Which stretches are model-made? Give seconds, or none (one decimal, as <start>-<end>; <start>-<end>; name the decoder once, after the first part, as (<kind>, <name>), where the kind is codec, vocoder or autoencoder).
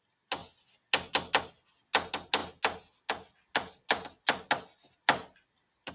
none